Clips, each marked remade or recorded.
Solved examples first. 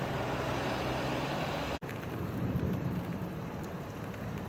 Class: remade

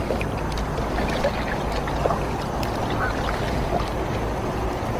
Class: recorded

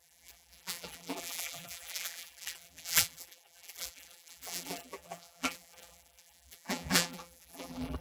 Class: remade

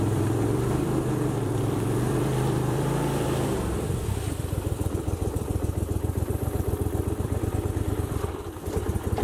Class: remade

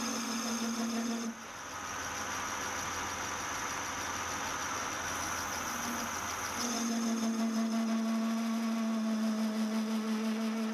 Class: recorded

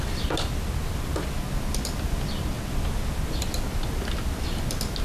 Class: recorded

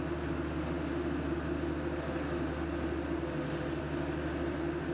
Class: recorded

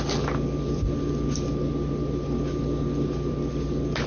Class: recorded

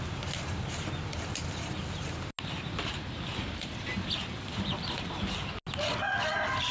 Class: recorded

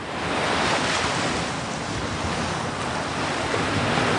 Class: recorded